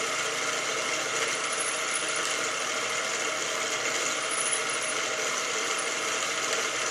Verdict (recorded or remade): remade